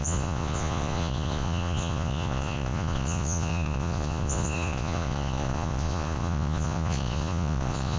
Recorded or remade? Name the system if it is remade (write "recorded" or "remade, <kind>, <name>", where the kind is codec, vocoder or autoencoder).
remade, vocoder, Vocos